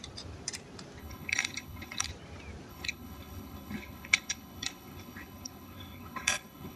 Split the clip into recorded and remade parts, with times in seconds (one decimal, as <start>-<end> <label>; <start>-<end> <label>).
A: 0.0-1.0 recorded; 1.0-2.1 remade; 2.1-2.7 recorded; 2.7-6.8 remade

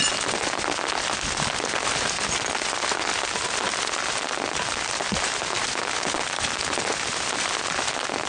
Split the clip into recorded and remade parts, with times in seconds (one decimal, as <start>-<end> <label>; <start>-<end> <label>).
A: 0.0-8.3 recorded